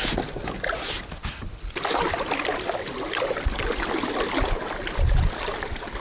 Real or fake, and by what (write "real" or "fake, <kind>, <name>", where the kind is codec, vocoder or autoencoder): real